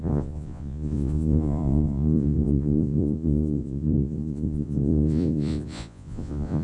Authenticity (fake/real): fake